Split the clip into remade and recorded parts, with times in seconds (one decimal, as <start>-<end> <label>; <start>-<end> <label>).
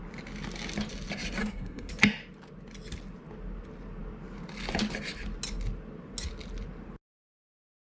0.0-1.4 recorded; 1.4-1.9 remade; 1.9-8.0 recorded